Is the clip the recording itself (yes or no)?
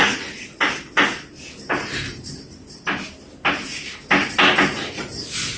yes